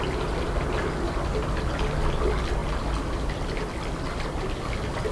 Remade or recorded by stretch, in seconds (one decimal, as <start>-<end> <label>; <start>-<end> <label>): 0.0-5.1 recorded